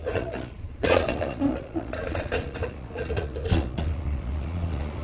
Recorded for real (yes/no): no